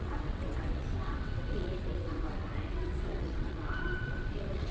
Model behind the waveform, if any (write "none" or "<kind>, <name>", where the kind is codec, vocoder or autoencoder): vocoder, WaveNeXt